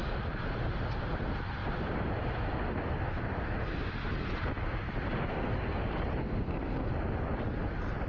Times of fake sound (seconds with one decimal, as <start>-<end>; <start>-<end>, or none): 5.3-5.8; 6.2-6.9